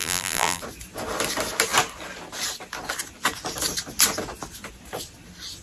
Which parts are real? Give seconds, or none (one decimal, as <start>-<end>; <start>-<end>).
0.6-5.6